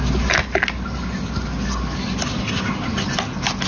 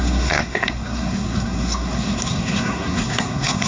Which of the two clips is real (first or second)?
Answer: first